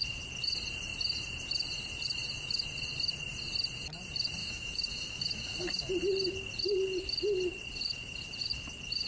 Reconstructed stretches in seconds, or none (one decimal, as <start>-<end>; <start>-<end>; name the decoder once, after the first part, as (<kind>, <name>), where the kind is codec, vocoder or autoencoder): 4.4-5.9 (autoencoder, DAC-VAE)